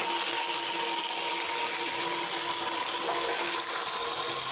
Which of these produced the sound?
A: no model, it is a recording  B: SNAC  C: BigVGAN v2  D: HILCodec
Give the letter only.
A